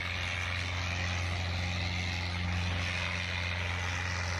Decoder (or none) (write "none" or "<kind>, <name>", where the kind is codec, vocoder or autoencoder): none